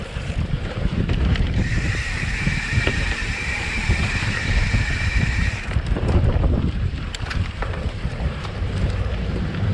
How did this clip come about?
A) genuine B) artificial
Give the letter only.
B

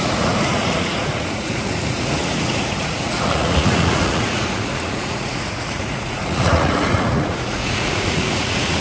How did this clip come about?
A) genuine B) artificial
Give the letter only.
B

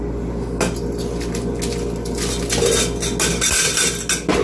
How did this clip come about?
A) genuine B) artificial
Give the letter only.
A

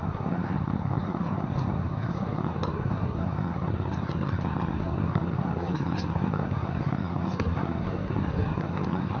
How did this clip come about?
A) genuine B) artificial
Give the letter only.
B